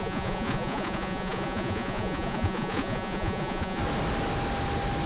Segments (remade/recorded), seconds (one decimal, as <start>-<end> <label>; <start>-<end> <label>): 0.0-3.8 remade; 3.8-5.1 recorded